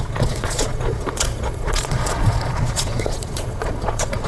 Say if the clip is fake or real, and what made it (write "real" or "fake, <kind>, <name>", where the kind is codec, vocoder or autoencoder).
fake, vocoder, Vocos